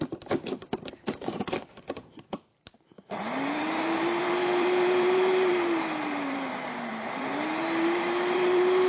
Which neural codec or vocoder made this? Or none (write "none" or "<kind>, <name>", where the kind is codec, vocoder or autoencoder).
vocoder, BigVGAN v2